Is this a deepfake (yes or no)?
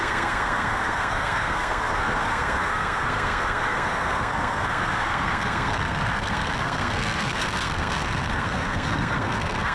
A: yes